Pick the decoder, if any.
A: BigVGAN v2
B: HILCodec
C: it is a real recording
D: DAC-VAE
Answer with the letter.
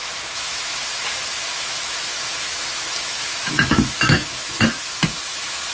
D